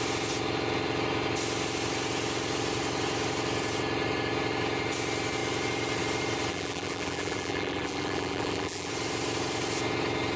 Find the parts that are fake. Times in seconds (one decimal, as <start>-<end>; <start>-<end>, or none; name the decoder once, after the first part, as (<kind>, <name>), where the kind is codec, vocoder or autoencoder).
6.5-8.9 (vocoder, BigVGAN v2)